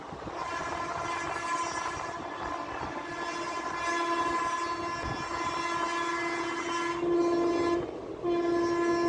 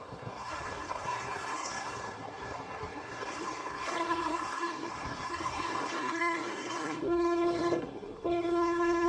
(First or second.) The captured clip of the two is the first